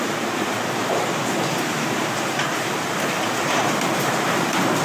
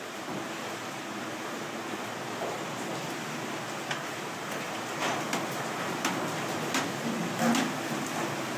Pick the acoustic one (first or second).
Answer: second